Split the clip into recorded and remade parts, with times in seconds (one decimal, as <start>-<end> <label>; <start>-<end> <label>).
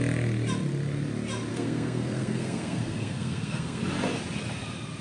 0.0-1.5 recorded; 1.5-3.8 remade; 3.8-5.0 recorded